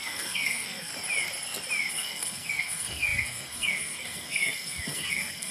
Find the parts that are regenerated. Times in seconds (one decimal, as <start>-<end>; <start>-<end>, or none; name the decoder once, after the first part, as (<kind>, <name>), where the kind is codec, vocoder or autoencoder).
0.0-0.9 (codec, SNAC); 1.9-5.5